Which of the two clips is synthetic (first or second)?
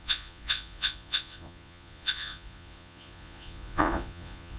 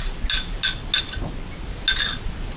first